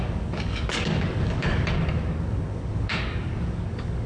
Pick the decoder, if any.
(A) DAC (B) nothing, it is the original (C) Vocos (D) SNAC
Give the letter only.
A